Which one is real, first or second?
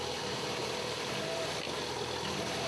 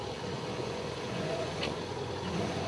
first